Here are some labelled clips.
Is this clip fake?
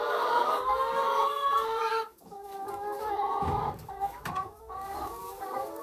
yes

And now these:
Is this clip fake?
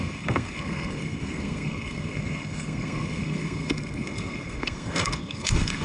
yes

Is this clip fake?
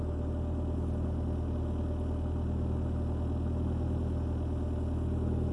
no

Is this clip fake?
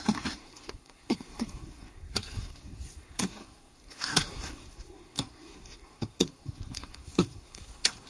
yes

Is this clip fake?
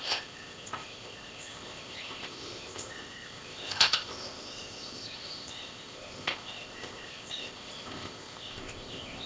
yes